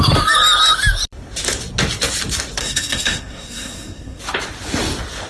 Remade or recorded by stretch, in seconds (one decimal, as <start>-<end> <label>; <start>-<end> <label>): 0.0-2.6 recorded; 2.6-4.2 remade; 4.2-5.3 recorded